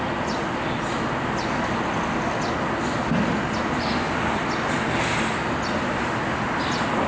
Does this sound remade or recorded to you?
recorded